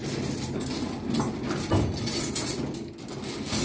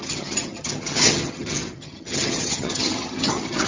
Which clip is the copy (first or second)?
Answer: second